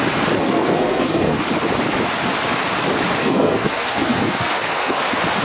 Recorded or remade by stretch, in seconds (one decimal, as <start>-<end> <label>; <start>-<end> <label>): 0.0-0.4 recorded; 0.4-1.4 remade; 1.4-3.2 recorded; 3.2-5.0 remade; 5.0-5.4 recorded